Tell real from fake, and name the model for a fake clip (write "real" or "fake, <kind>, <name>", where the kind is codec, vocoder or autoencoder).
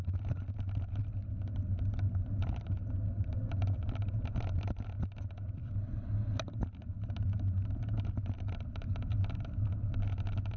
real